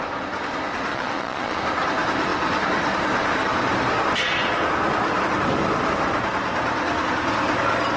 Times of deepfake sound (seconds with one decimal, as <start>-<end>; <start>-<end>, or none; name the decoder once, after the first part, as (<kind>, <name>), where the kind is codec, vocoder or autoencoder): 0.9-1.6 (vocoder, Vocos)